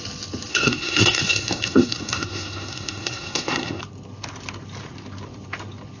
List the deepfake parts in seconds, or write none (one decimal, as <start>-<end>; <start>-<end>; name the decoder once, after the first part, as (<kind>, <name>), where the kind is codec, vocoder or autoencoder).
0.5-3.8 (codec, SNAC)